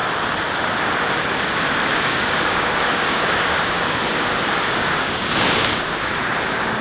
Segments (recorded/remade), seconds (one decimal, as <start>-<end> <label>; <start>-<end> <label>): 0.0-1.9 recorded; 1.9-6.0 remade; 6.0-6.8 recorded

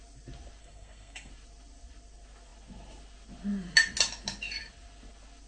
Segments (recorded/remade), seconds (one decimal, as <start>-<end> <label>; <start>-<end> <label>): 0.0-0.6 recorded; 0.6-1.3 remade; 1.3-5.5 recorded

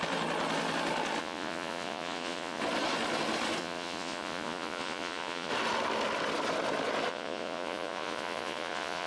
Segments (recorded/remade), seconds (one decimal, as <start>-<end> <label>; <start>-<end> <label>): 0.0-1.2 recorded; 1.2-2.6 remade; 2.6-3.6 recorded; 3.6-5.5 remade; 5.5-7.1 recorded; 7.1-9.1 remade